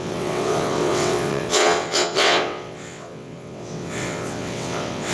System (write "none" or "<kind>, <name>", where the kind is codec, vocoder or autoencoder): vocoder, WaveNeXt